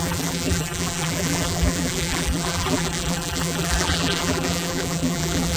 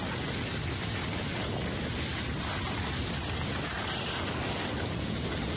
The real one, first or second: second